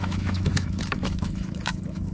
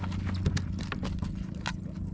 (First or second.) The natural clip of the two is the second